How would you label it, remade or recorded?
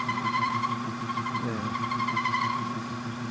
remade